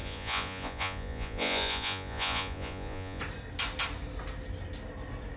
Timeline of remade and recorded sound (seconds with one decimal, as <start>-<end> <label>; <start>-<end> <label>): 0.0-3.2 remade; 3.2-5.4 recorded